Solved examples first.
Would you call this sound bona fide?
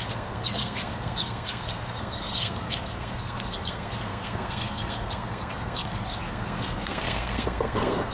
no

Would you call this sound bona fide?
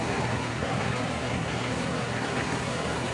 no